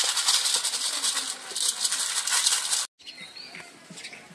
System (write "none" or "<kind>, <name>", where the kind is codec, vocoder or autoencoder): none